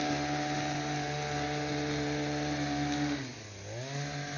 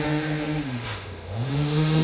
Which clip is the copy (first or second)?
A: second